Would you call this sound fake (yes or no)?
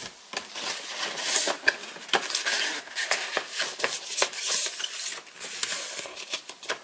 no